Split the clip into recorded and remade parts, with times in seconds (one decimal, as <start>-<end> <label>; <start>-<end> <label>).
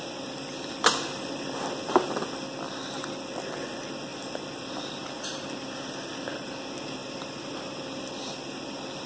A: 0.0-7.0 recorded; 7.0-9.1 remade